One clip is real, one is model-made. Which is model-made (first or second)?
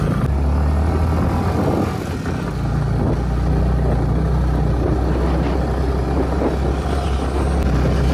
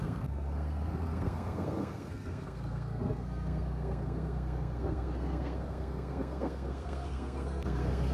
second